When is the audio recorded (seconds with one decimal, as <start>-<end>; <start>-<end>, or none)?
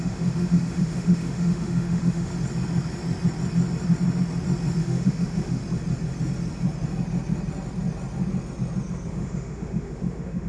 2.3-4.8; 5.6-9.1